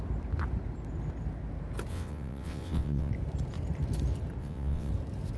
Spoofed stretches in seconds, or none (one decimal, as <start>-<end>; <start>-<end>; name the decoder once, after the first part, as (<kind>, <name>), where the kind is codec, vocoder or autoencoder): 1.9-3.1 (vocoder, WaveNeXt); 4.4-4.9